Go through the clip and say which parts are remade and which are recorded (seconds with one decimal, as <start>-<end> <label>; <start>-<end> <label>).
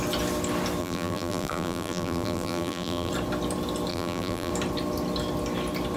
0.0-0.8 recorded; 0.8-3.1 remade; 3.1-3.9 recorded; 3.9-4.5 remade; 4.5-6.0 recorded